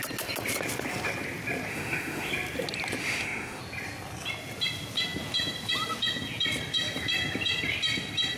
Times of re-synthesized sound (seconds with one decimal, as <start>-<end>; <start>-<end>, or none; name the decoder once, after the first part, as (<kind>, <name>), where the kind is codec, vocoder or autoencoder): 1.7-2.3 (autoencoder, DAC-VAE); 3.0-3.6